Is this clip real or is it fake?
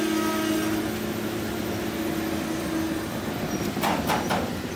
real